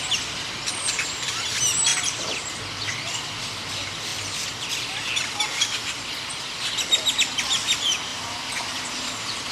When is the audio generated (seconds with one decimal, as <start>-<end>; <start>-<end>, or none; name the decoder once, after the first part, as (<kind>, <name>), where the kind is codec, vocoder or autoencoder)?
1.9-2.6 (vocoder, BigVGAN v2); 8.1-9.5